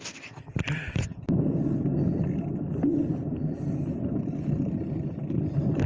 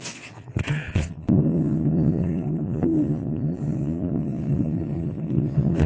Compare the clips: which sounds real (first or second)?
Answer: first